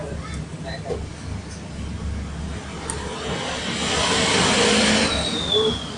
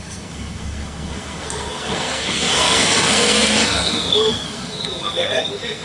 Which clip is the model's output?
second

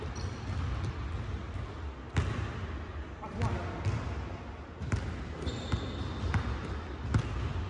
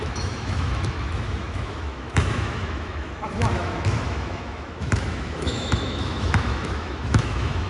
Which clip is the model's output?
second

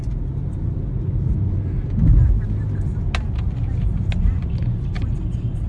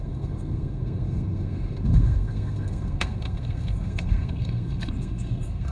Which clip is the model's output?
second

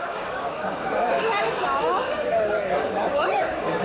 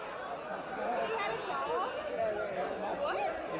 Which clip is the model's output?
first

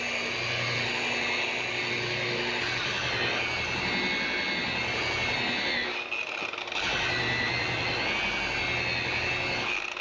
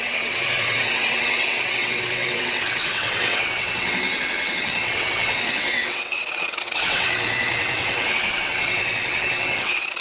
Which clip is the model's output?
second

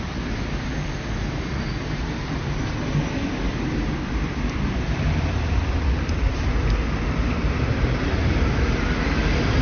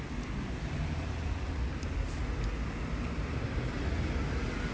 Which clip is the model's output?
first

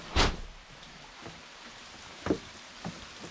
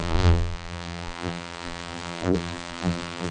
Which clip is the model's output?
second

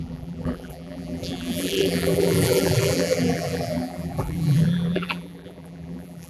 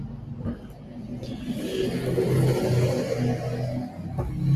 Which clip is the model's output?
first